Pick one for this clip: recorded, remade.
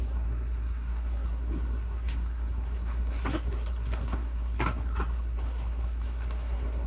remade